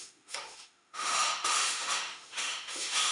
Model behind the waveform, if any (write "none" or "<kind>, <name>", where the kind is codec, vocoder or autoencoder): autoencoder, DAC-VAE